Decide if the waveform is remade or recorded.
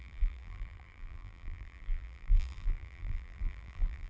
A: remade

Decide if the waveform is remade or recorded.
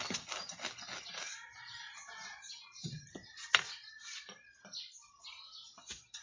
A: recorded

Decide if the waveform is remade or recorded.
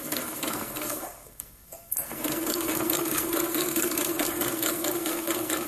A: remade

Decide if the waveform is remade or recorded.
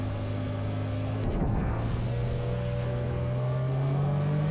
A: remade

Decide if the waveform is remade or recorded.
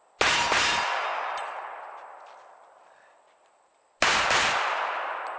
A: recorded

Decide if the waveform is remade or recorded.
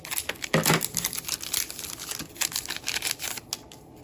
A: recorded